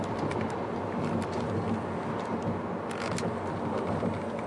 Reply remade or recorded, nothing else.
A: recorded